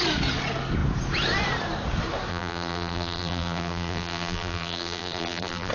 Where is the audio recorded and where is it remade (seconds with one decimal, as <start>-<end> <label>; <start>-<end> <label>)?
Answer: 0.0-2.3 recorded; 2.3-5.7 remade